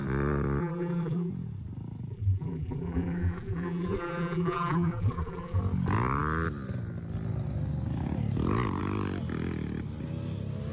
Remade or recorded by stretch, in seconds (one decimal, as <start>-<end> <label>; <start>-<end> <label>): 0.0-0.6 recorded; 0.6-1.3 remade; 1.3-2.1 recorded; 2.1-5.6 remade; 5.6-10.7 recorded

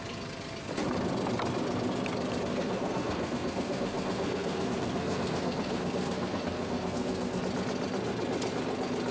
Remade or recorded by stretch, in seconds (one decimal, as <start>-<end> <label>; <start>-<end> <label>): 0.0-2.5 recorded; 2.5-7.4 remade; 7.4-9.1 recorded